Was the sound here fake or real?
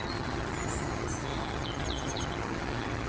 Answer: fake